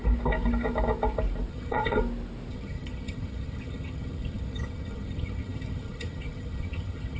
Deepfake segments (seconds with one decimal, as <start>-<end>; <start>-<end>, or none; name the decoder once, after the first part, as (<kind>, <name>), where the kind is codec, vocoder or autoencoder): 1.5-2.0 (vocoder, HiFi-GAN); 2.5-7.2